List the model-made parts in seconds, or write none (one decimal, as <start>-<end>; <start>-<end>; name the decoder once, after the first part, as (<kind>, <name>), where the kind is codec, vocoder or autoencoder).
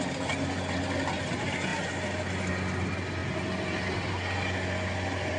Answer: none